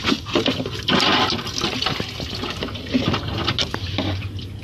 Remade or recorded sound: recorded